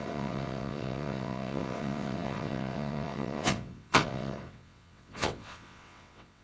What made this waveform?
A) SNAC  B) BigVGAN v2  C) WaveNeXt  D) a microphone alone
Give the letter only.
C